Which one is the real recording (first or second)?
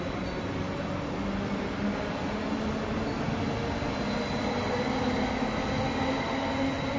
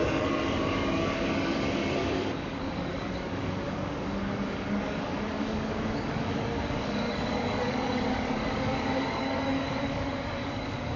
first